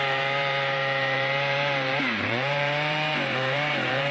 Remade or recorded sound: remade